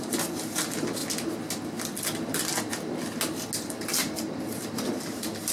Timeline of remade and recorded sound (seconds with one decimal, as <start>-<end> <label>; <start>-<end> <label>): 0.0-1.0 remade; 1.0-4.3 recorded; 4.3-5.5 remade